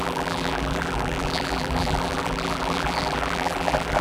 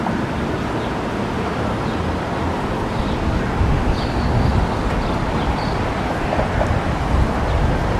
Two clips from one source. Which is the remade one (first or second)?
first